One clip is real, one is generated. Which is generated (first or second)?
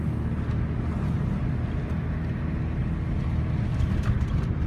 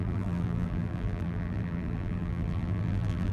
second